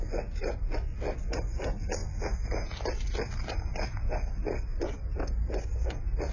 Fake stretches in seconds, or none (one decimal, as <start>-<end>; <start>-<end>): none